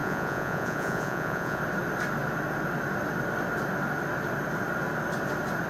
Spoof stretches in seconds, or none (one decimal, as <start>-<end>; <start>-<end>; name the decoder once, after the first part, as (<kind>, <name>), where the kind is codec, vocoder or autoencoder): 0.0-1.6 (vocoder, Vocos)